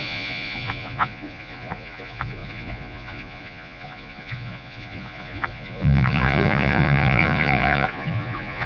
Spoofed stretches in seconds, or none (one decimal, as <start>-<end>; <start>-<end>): 0.0-8.7